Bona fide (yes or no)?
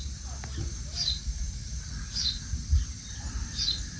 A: yes